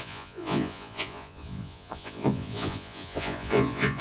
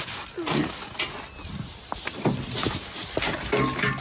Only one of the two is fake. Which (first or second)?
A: first